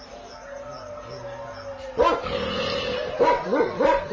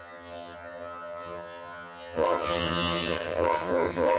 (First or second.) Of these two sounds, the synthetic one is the second